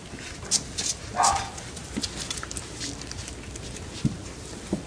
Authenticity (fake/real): real